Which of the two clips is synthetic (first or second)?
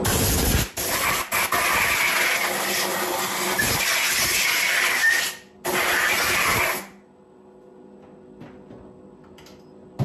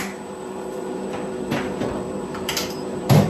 second